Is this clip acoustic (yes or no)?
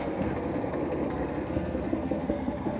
no